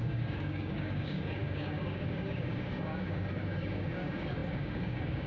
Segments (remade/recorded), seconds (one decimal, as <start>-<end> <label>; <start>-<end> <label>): 0.0-5.3 remade